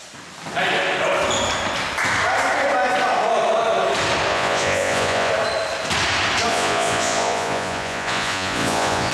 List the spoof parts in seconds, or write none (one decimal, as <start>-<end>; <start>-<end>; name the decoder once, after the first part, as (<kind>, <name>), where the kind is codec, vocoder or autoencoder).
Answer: 4.3-5.3 (vocoder, Vocos); 6.5-9.1